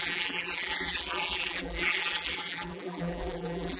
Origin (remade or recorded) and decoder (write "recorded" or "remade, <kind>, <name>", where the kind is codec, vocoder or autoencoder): remade, vocoder, BigVGAN v2